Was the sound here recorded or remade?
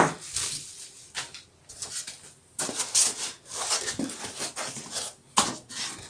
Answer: recorded